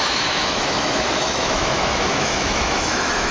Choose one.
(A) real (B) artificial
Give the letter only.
B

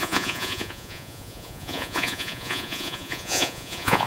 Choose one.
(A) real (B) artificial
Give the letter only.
B